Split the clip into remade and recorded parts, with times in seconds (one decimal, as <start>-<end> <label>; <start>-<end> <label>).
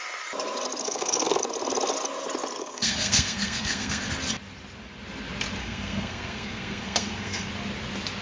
0.0-0.8 recorded; 0.8-1.4 remade; 1.4-2.6 recorded; 2.6-4.1 remade; 4.1-5.6 recorded; 5.6-7.5 remade; 7.5-8.2 recorded